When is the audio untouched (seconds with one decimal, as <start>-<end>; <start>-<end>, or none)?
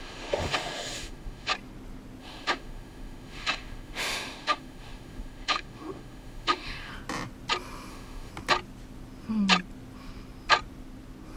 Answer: 1.5-2.2; 6.9-7.9; 8.3-11.4